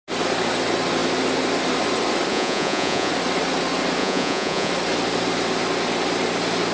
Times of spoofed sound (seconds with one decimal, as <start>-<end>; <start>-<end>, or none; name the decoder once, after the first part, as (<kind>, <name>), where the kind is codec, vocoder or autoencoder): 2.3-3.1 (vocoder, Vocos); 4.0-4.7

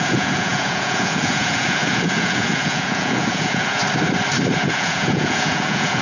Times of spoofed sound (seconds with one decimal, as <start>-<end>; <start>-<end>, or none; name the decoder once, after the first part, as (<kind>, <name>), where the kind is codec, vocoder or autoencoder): 0.0-3.8 (vocoder, Vocos); 4.7-6.0

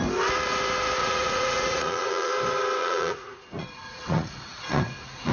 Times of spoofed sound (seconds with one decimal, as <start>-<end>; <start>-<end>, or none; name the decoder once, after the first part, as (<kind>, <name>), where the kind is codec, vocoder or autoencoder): 1.0-2.3 (vocoder, Vocos); 2.8-5.3

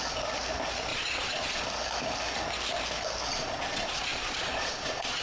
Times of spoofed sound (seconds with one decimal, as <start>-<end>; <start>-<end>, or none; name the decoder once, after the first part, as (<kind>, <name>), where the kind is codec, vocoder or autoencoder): 0.9-1.6 (vocoder, Vocos); 3.3-5.2

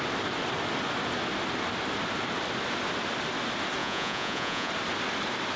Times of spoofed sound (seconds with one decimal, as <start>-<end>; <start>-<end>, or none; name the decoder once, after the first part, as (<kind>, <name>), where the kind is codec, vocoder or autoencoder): 3.8-4.7 (vocoder, Vocos)

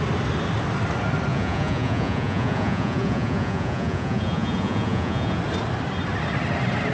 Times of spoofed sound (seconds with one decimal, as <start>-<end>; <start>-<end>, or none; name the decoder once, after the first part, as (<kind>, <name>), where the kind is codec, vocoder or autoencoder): 1.3-5.4 (vocoder, Vocos)